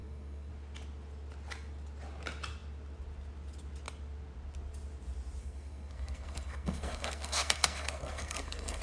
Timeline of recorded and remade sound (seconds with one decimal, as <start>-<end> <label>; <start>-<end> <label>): 0.0-0.5 remade; 0.5-5.4 recorded; 5.4-8.8 remade